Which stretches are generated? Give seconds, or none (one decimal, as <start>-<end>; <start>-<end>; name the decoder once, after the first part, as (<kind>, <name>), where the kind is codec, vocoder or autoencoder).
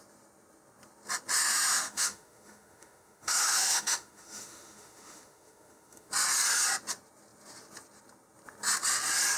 1.4-6.1 (autoencoder, DAC-VAE)